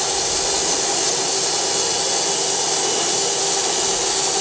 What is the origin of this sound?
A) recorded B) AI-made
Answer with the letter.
A